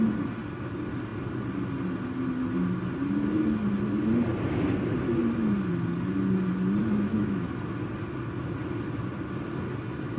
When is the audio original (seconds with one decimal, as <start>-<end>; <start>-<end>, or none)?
0.0-6.8; 7.4-10.2